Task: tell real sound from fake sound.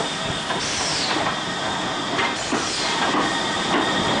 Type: real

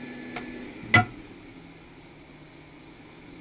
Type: real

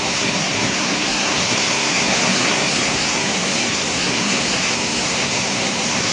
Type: fake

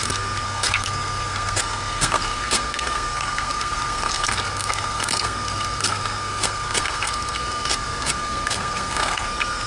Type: fake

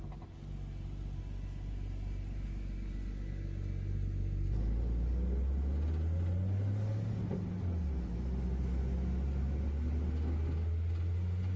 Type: real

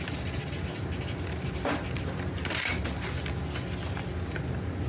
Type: real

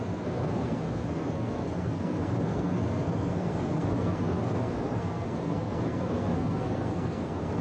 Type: fake